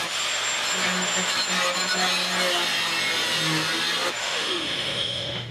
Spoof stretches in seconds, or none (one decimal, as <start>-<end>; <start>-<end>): 4.2-5.5